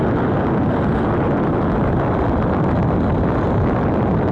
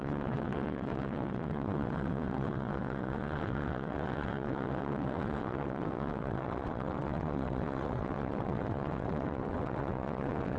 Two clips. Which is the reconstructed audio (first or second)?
second